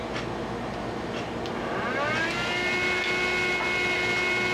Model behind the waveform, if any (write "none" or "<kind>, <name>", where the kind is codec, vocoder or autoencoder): none